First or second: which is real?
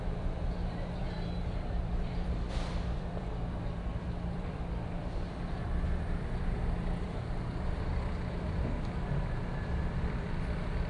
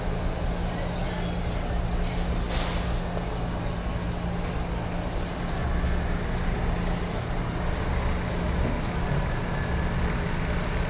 second